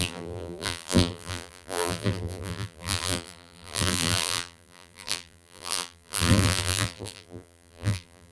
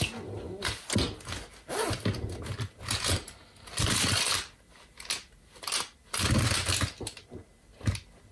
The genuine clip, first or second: second